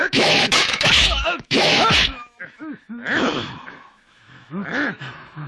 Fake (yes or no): yes